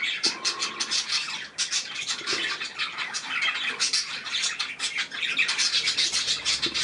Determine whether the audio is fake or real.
real